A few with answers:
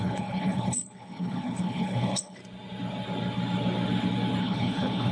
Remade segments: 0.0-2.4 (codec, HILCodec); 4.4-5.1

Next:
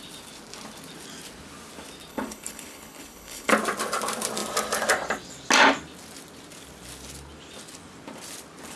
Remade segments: 2.1-3.5 (codec, HILCodec)

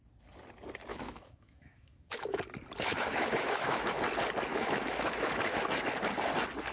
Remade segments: 0.9-2.4 (autoencoder, DAC-VAE); 2.9-3.9; 4.5-5.6

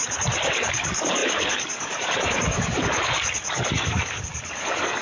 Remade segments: 0.6-5.0 (codec, DAC)

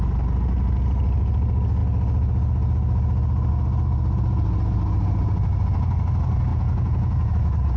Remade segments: 6.5-7.3 (vocoder, Vocos)

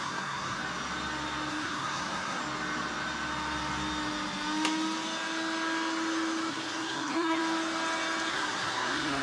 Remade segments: 0.0-0.6 (codec, SNAC); 1.5-2.4; 6.5-7.4; 8.3-9.2